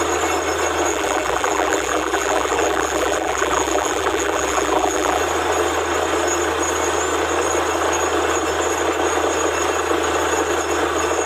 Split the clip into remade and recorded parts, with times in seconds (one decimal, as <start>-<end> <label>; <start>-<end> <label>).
0.0-0.9 recorded; 0.9-5.2 remade; 5.2-11.3 recorded